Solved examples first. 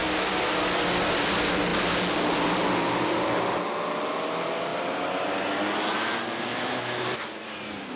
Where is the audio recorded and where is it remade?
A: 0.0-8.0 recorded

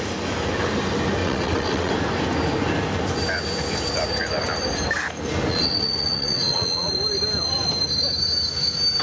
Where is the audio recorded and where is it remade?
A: 0.0-1.2 recorded; 1.2-1.9 remade; 1.9-5.5 recorded; 5.5-6.9 remade; 6.9-9.0 recorded

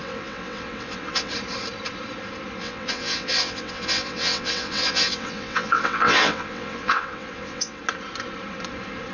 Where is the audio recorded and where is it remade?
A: 0.0-1.3 remade; 1.3-2.6 recorded; 2.6-7.8 remade; 7.8-9.1 recorded

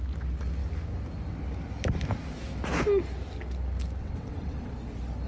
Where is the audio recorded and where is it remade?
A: 0.0-4.0 recorded; 4.0-4.7 remade; 4.7-5.3 recorded

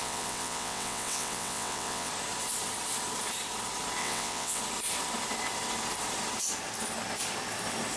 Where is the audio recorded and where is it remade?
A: 0.0-2.1 remade; 2.1-4.0 recorded; 4.0-4.6 remade; 4.6-8.0 recorded

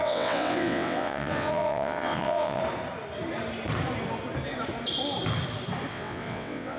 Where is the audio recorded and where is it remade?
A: 0.0-2.6 remade; 2.6-5.9 recorded; 5.9-6.8 remade

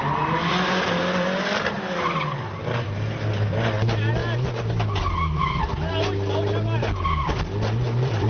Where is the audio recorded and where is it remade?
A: 0.0-8.3 recorded